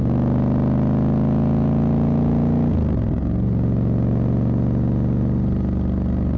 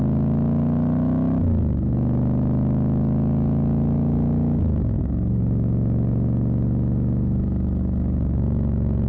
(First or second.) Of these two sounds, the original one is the first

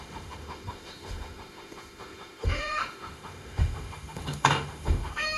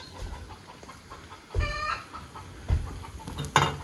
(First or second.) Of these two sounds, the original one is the second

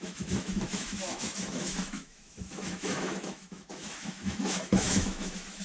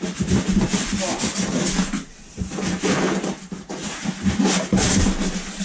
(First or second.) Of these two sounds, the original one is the second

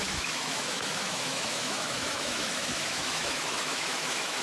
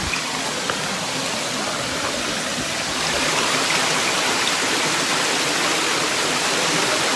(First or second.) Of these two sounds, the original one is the second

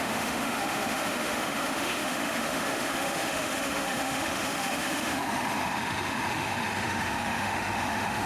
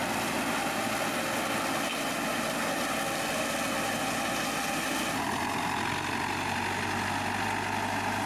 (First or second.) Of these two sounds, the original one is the second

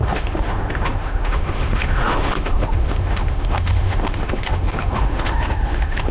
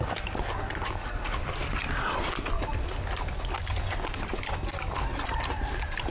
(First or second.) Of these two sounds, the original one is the second